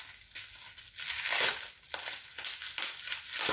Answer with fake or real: real